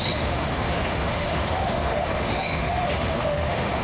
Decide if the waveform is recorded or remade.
remade